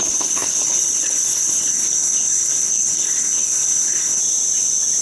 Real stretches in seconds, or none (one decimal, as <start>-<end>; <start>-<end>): 4.2-5.0